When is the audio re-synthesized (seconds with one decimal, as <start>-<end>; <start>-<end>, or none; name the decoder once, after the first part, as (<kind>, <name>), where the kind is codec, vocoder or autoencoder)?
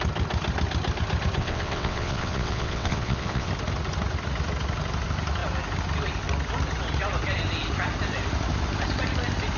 1.4-3.5 (vocoder, WaveNeXt)